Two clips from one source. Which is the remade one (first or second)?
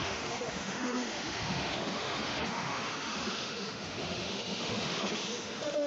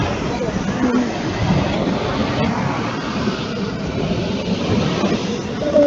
first